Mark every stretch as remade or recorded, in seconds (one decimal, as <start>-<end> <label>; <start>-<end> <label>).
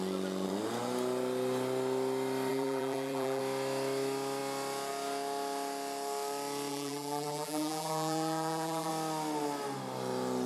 0.0-2.5 recorded; 2.5-3.4 remade; 3.4-6.7 recorded; 6.7-8.9 remade; 8.9-10.5 recorded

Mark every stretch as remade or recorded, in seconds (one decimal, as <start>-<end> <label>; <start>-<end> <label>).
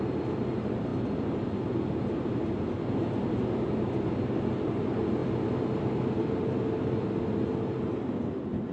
0.0-8.7 recorded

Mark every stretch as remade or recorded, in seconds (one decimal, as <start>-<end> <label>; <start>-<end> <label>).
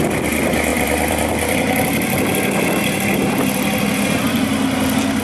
0.0-0.7 recorded; 0.7-3.1 remade; 3.1-5.2 recorded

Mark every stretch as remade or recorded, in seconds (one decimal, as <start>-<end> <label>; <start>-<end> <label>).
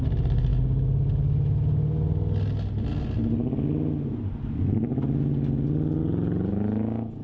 0.0-7.2 recorded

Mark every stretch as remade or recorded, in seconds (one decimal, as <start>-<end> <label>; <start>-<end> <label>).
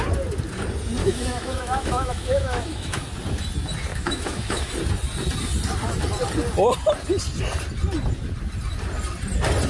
0.0-1.0 recorded; 1.0-3.0 remade; 3.0-3.9 recorded; 3.9-4.7 remade; 4.7-9.7 recorded